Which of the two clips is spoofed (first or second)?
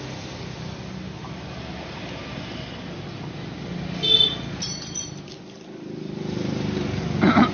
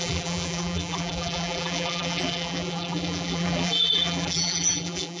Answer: second